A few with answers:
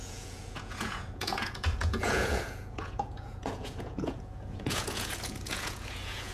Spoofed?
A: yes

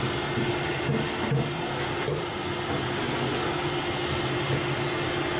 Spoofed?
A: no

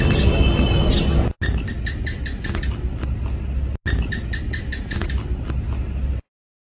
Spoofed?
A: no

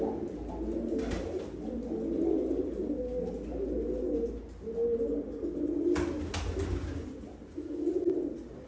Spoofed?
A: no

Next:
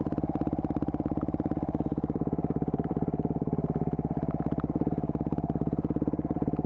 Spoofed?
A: yes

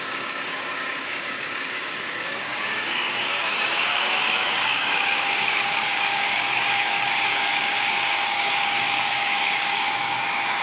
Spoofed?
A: yes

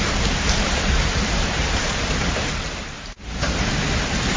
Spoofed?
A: yes